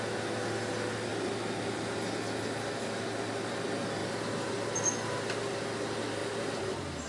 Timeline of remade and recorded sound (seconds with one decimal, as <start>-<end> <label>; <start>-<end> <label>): 0.0-7.1 recorded